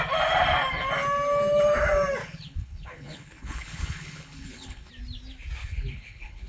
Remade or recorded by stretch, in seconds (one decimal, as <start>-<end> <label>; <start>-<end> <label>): 0.0-2.2 recorded; 2.2-4.9 remade; 4.9-5.6 recorded; 5.6-6.5 remade